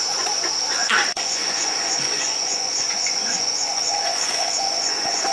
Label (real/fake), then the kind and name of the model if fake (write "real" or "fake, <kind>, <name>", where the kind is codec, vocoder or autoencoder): fake, vocoder, Vocos